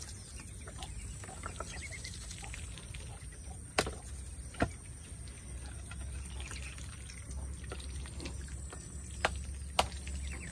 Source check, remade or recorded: recorded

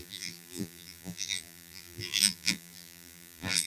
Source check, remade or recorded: remade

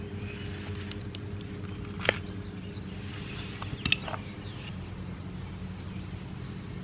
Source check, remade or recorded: recorded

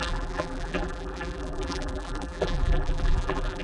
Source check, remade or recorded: remade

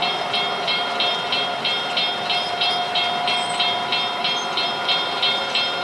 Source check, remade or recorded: remade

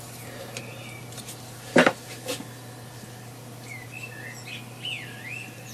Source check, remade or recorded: recorded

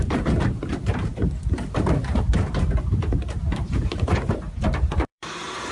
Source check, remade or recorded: remade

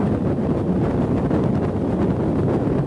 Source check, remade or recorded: recorded